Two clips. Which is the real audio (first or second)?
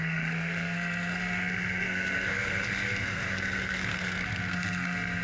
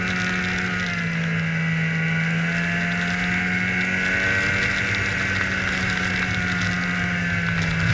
second